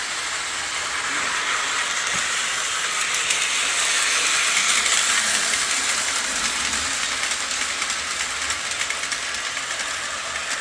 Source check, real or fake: real